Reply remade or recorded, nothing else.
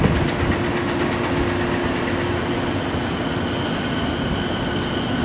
recorded